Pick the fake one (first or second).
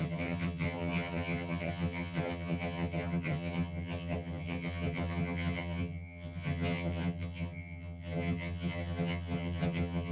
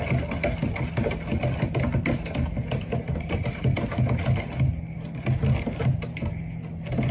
first